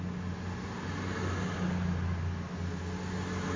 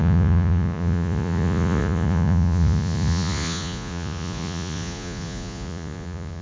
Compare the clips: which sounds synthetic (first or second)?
second